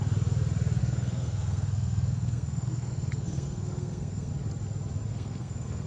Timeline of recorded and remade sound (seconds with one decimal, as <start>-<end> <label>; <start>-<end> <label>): 0.0-0.8 recorded; 0.8-4.3 remade; 4.3-5.1 recorded; 5.1-5.9 remade